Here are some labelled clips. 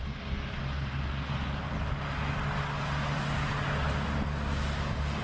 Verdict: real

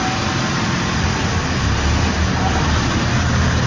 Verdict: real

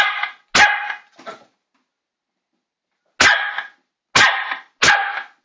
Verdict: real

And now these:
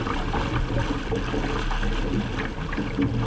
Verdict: real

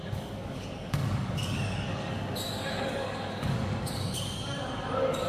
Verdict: fake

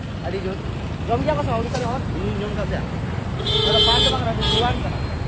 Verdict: real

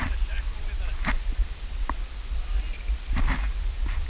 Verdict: real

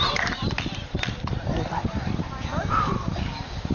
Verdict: real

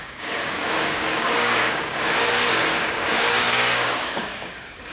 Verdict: fake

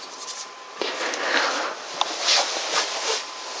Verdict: real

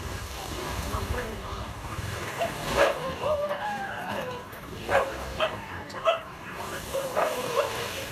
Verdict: fake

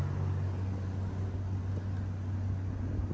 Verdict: real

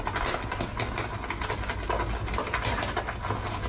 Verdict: real